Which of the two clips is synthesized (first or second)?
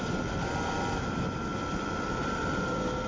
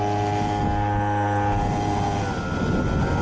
first